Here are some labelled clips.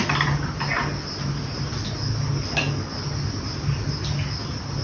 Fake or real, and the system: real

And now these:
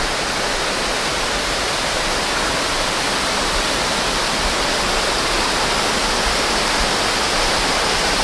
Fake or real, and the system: real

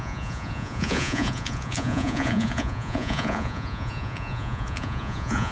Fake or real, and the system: fake, vocoder, Vocos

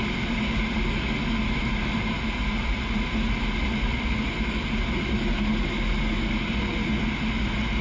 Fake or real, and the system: real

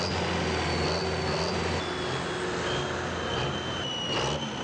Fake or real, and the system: real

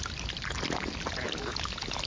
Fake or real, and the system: real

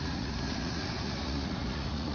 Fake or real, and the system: fake, vocoder, Vocos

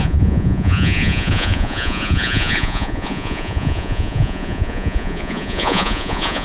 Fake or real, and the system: fake, vocoder, Vocos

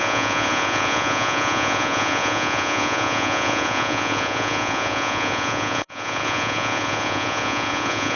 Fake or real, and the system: fake, vocoder, Vocos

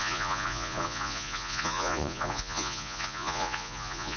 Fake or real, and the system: fake, vocoder, Vocos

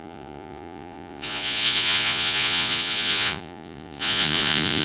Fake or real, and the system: fake, vocoder, Vocos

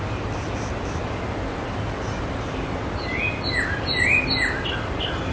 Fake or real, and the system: real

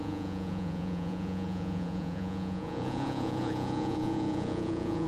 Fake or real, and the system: fake, vocoder, Vocos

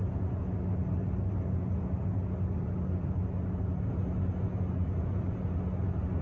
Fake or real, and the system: real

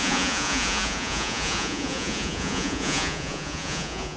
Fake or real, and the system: fake, vocoder, Vocos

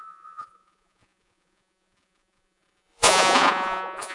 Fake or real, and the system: fake, vocoder, Vocos